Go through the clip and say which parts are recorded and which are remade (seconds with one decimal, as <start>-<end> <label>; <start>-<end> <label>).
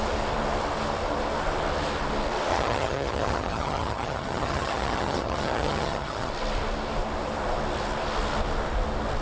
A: 0.0-2.5 recorded; 2.5-6.3 remade; 6.3-9.2 recorded